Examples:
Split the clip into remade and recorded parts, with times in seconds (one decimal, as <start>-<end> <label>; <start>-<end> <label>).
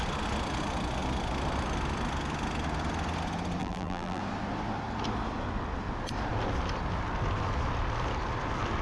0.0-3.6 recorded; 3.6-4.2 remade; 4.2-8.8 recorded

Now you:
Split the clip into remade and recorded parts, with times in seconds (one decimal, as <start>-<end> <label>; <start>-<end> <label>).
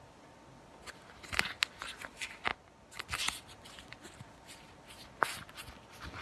0.0-6.2 recorded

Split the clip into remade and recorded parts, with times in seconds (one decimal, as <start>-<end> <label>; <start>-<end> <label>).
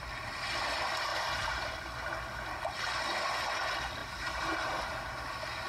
0.0-1.1 recorded; 1.1-1.8 remade; 1.8-4.0 recorded; 4.0-4.8 remade; 4.8-5.7 recorded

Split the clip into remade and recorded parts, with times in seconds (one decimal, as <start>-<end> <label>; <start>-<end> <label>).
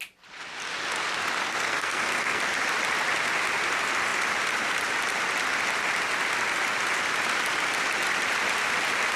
0.0-1.4 recorded; 1.4-2.4 remade; 2.4-9.2 recorded